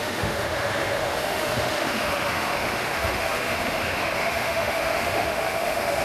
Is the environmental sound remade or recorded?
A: remade